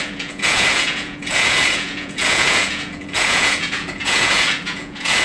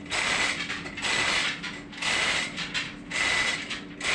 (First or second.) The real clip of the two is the second